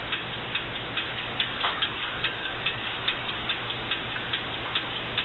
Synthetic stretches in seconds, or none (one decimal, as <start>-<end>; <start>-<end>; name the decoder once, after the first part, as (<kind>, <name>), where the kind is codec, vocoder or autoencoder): 1.1-3.5 (codec, DAC)